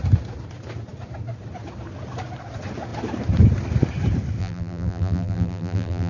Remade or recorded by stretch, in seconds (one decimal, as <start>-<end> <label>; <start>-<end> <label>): 0.0-4.4 recorded; 4.4-6.1 remade